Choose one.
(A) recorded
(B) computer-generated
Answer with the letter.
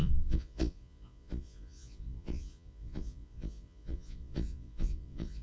B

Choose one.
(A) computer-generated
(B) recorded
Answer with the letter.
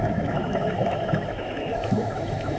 A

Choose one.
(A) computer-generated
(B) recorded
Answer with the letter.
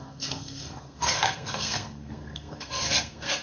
A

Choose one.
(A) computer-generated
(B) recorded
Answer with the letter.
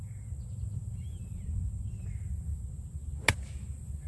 B